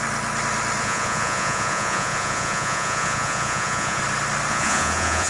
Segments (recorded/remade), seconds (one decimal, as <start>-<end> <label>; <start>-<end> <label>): 0.0-0.8 recorded; 0.8-4.0 remade; 4.0-4.5 recorded; 4.5-5.3 remade